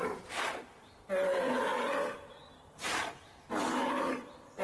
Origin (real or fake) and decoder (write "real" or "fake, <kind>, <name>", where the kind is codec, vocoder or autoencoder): fake, vocoder, BigVGAN v2